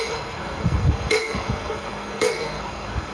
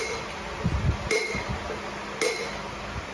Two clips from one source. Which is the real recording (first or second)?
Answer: second